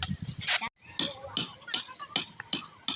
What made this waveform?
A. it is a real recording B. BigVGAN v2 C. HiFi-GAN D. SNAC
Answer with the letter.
A